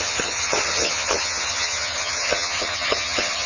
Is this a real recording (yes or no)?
no